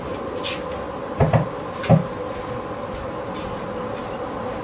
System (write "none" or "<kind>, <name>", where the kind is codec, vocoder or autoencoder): none